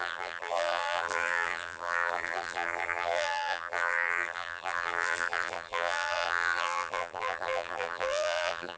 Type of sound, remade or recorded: remade